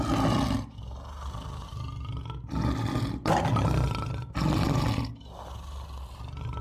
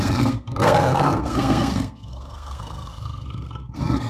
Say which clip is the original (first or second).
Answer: first